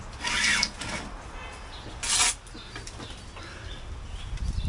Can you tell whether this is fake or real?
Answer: real